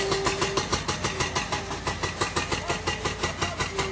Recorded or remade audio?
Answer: recorded